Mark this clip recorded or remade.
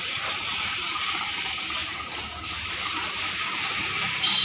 remade